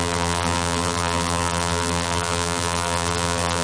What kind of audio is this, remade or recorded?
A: remade